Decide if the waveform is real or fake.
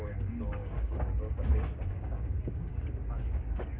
fake